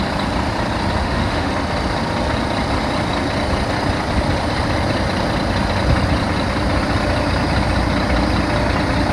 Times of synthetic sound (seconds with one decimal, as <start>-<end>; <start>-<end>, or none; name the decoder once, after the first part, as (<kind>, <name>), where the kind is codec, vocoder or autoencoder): 1.0-1.5 (autoencoder, DAC-VAE)